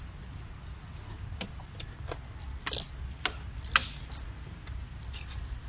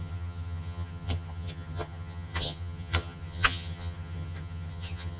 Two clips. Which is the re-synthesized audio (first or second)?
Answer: second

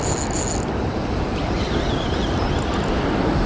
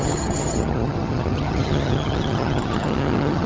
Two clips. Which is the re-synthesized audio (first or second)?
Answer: second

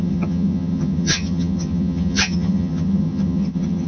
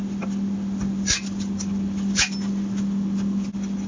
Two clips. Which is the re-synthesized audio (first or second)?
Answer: first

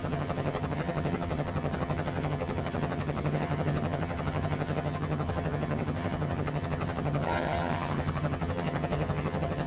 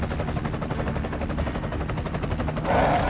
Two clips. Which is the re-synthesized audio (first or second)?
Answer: first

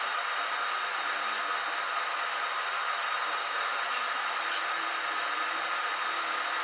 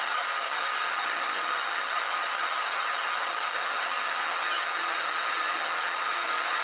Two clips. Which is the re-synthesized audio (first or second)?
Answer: second